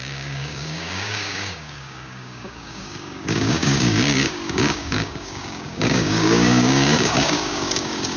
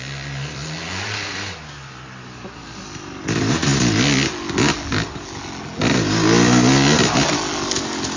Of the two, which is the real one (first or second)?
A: second